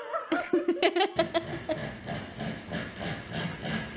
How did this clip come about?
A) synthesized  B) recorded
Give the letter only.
B